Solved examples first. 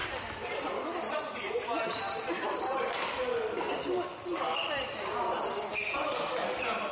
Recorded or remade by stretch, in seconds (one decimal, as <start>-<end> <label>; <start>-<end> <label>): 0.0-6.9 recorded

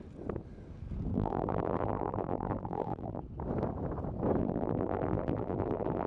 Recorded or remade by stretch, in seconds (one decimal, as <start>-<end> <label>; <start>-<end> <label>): 0.0-1.1 recorded; 1.1-3.2 remade; 3.2-4.4 recorded; 4.4-6.1 remade

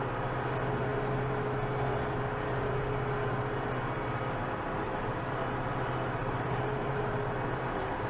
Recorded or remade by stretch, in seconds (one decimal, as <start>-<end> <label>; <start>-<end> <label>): 0.0-6.2 recorded; 6.2-7.0 remade; 7.0-8.1 recorded